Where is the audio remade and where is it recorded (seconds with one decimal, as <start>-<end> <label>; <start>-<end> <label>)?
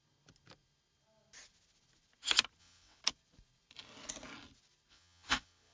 0.0-2.6 recorded; 2.6-3.0 remade; 3.0-4.9 recorded; 4.9-5.7 remade